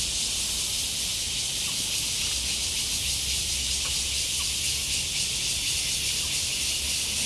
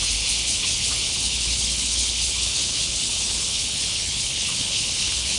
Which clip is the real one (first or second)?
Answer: first